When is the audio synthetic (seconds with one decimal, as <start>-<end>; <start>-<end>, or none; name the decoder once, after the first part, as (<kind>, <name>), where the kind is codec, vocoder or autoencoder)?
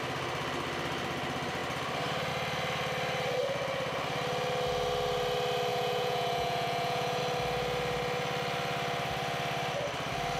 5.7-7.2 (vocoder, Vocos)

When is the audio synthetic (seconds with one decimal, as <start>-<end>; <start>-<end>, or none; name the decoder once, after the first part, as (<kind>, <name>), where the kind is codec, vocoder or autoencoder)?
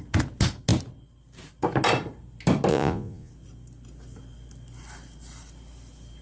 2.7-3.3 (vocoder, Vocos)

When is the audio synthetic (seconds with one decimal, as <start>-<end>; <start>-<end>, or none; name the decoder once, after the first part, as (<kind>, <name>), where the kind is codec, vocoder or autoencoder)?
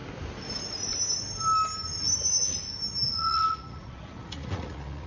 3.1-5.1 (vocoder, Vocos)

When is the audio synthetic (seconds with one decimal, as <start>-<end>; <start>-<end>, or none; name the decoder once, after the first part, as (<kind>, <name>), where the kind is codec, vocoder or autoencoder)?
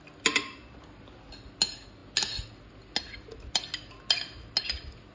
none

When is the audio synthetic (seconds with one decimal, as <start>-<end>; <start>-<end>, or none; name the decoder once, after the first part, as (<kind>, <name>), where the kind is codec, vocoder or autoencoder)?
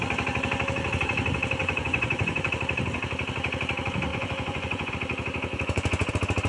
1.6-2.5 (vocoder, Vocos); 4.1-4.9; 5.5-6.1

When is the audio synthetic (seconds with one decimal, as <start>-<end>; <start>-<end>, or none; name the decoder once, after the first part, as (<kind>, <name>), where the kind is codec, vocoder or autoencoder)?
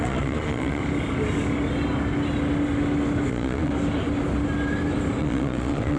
0.0-0.8 (vocoder, Vocos); 3.3-3.7; 5.2-6.0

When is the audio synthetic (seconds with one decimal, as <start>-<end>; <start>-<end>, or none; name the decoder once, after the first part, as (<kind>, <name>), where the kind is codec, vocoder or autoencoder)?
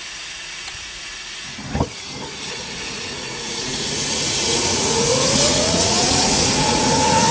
0.0-1.5 (vocoder, Vocos); 2.5-7.3